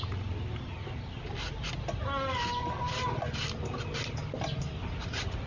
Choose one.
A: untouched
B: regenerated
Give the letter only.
A